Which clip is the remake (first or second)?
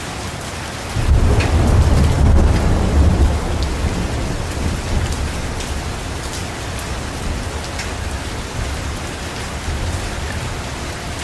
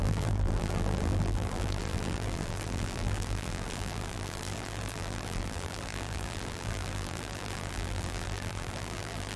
second